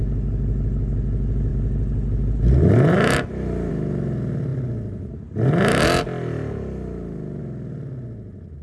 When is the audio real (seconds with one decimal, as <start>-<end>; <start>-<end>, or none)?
0.0-8.6